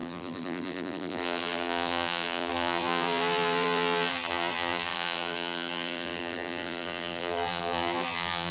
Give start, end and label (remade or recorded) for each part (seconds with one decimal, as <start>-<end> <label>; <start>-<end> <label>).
0.0-8.5 remade